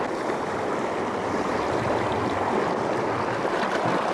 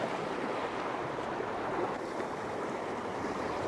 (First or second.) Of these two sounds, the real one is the first